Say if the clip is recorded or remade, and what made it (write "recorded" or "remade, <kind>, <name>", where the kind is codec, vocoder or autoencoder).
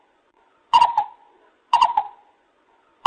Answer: remade, vocoder, Vocos